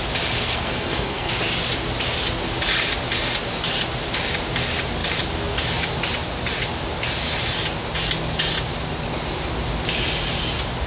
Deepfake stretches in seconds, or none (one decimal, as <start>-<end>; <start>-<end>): 0.4-1.3

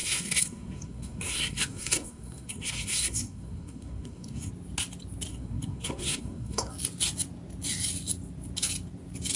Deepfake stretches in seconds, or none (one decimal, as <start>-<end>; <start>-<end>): 0.0-4.5; 5.3-6.7

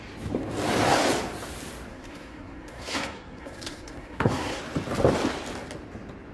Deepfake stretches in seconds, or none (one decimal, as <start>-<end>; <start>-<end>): 1.9-4.6

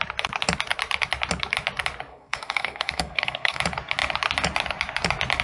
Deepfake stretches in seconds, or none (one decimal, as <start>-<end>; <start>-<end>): 2.1-3.6

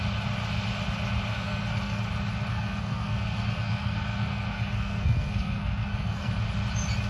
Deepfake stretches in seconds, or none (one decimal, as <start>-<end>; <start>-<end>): 1.3-2.0; 2.5-6.3

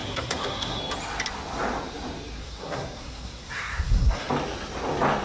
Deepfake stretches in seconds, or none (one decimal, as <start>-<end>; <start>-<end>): 0.0-0.8; 2.4-4.3

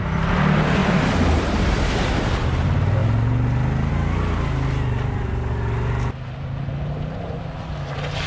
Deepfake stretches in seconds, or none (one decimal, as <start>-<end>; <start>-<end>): none

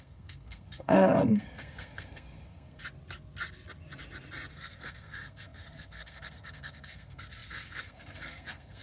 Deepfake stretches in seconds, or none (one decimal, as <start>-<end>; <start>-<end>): 0.0-2.8; 4.5-8.8